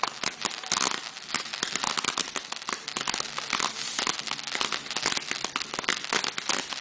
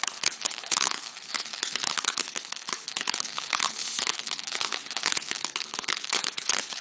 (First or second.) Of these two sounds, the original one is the first